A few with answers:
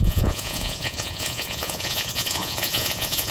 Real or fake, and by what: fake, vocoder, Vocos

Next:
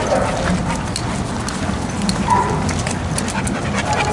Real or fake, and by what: real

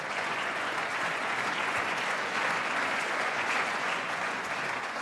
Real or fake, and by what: fake, vocoder, Vocos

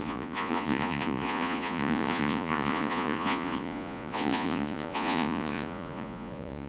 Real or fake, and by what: fake, vocoder, Vocos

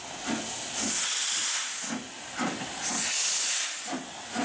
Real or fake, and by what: real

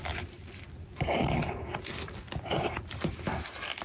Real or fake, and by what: real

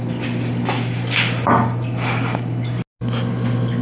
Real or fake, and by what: real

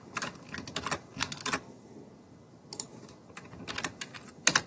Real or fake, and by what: real